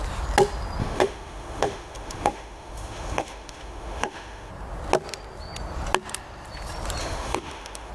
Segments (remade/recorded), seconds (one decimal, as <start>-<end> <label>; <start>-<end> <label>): 0.0-0.8 recorded; 0.8-4.5 remade; 4.5-7.0 recorded; 7.0-7.9 remade

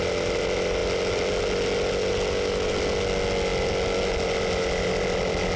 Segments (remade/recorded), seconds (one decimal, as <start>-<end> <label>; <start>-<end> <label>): 0.0-5.6 recorded

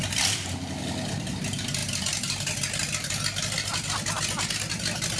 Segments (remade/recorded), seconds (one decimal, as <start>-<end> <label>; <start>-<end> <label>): 0.0-5.2 recorded

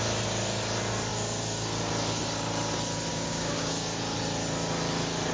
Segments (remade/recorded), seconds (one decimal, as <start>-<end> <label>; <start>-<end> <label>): 0.0-3.1 recorded; 3.1-3.7 remade; 3.7-5.3 recorded

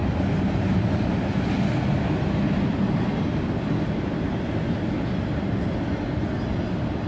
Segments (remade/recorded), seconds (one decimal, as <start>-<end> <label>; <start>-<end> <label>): 0.0-7.1 recorded

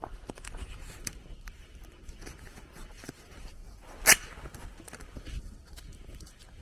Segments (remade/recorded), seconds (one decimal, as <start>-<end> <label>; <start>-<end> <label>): 0.0-3.6 remade; 3.6-4.8 recorded; 4.8-6.6 remade

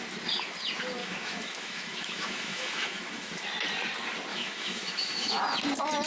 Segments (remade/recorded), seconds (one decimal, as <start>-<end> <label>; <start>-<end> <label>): 0.0-1.0 recorded; 1.0-3.3 remade; 3.3-4.3 recorded; 4.3-5.4 remade; 5.4-6.1 recorded

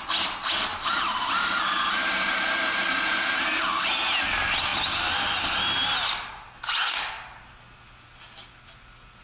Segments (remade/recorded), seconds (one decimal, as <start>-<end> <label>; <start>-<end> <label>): 0.0-0.7 recorded; 0.7-3.6 remade; 3.6-9.2 recorded